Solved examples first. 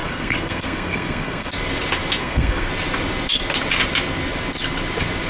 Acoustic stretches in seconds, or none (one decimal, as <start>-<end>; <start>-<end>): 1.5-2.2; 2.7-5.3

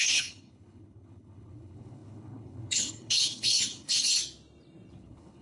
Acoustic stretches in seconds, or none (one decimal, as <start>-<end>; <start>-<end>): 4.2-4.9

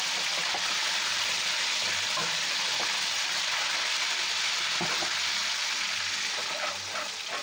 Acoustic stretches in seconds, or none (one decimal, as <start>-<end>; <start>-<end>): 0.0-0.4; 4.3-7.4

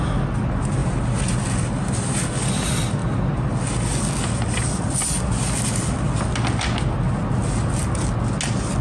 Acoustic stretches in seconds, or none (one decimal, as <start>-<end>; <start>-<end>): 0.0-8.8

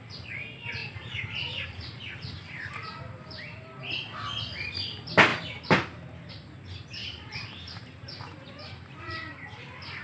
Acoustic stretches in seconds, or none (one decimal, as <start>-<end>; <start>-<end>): 0.0-0.8; 2.5-7.0; 7.7-10.0

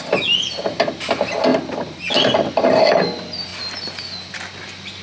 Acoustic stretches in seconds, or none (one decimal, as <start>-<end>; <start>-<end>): 0.0-5.0